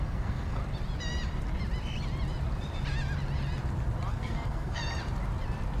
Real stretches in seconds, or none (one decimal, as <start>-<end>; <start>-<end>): 0.6-4.1; 4.8-5.8